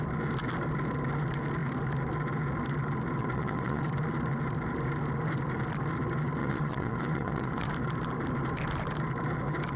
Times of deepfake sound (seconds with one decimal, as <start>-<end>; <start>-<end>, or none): 3.2-3.8; 6.4-7.7